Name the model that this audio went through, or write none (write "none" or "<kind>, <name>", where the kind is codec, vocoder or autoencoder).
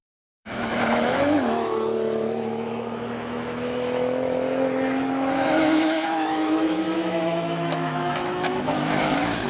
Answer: autoencoder, DAC-VAE